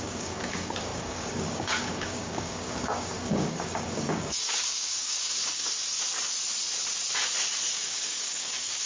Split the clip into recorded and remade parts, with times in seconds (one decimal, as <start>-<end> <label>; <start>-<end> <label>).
0.0-5.8 remade; 5.8-7.7 recorded; 7.7-8.9 remade